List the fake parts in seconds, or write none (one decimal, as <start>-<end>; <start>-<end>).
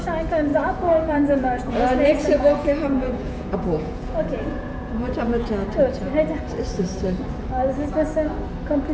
0.5-5.5